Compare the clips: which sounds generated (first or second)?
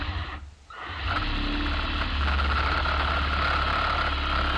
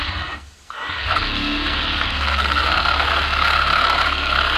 second